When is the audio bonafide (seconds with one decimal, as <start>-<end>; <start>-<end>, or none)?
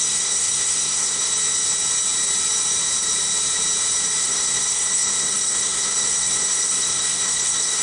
1.3-4.2